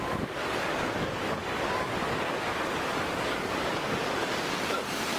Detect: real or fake fake